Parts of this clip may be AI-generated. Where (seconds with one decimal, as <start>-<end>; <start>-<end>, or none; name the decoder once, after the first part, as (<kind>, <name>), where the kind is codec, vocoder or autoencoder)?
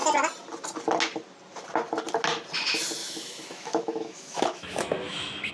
3.0-5.5 (autoencoder, DAC-VAE)